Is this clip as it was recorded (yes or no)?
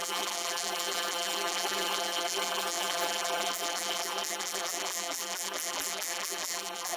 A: no